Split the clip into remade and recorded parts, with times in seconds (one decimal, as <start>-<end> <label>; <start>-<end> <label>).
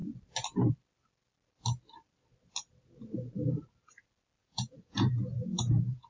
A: 0.0-4.4 recorded; 4.4-6.1 remade